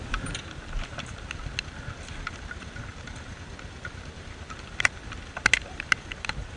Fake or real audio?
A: real